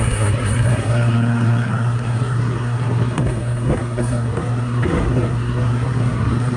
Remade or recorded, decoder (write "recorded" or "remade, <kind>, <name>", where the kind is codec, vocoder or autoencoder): remade, codec, SNAC